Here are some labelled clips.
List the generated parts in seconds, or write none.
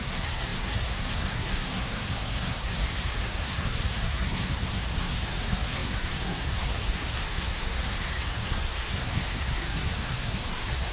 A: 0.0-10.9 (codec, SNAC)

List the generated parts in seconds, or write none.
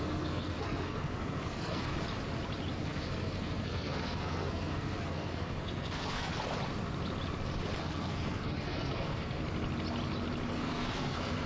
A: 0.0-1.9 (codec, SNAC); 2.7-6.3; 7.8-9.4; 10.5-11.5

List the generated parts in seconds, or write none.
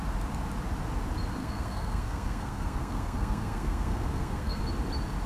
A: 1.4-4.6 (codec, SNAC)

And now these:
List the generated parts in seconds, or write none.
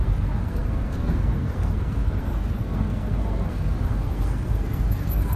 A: 0.0-5.4 (codec, SNAC)